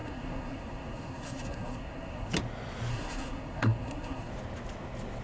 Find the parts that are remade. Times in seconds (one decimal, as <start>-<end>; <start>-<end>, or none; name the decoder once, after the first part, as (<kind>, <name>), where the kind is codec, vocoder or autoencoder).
0.0-2.3 (codec, SNAC); 2.9-4.3